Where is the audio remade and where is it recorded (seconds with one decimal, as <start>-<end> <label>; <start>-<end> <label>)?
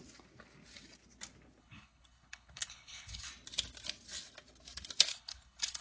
0.0-1.6 recorded; 1.6-3.3 remade; 3.3-5.1 recorded; 5.1-5.8 remade